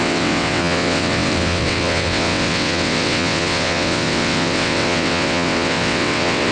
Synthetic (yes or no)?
yes